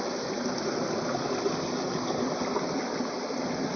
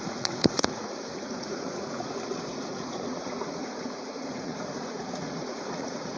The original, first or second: first